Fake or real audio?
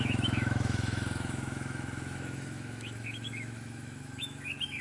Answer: fake